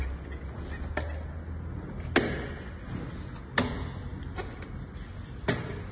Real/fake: real